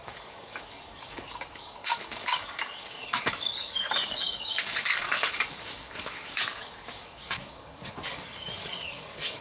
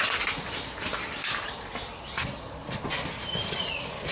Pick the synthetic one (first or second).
first